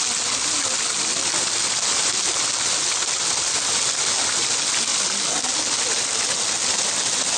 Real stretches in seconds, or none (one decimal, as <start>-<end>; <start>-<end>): 0.0-7.4